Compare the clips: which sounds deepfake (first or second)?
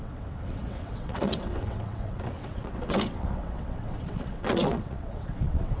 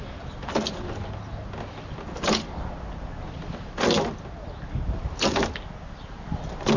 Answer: first